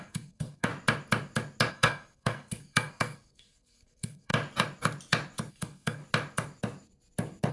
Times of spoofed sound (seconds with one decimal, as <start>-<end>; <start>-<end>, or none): 0.0-0.7; 1.7-4.3; 5.5-6.0